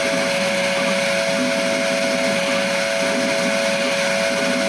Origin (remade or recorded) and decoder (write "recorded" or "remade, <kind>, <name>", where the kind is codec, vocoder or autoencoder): recorded